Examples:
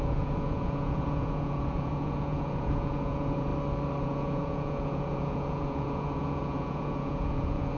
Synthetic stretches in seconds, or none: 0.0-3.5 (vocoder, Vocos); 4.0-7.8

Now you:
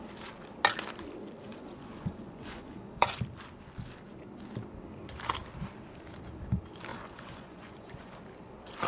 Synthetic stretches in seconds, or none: 1.5-3.2 (vocoder, Vocos); 6.9-8.2

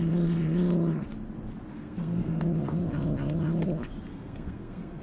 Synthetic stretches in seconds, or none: 1.7-2.4 (codec, SNAC); 4.1-5.0

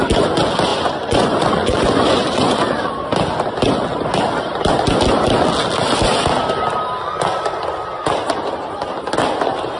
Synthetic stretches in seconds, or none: 0.7-2.9 (vocoder, Vocos)